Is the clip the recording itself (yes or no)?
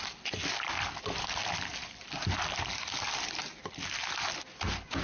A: yes